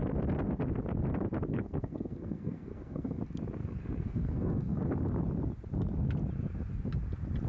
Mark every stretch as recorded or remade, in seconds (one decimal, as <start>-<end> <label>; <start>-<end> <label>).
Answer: 0.0-1.5 recorded; 1.5-3.2 remade; 3.2-3.6 recorded; 3.6-4.8 remade; 4.8-7.5 recorded